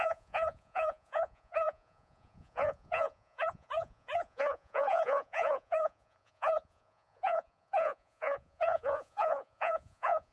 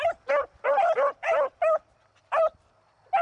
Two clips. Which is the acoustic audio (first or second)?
second